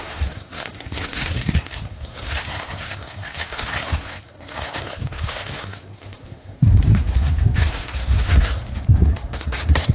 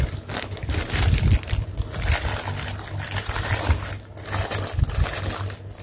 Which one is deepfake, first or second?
first